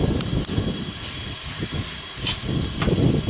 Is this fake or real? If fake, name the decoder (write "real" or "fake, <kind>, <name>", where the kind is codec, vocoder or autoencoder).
real